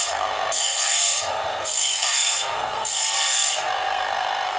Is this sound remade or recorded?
remade